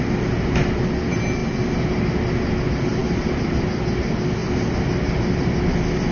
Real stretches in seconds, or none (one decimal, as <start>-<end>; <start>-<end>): 0.0-6.1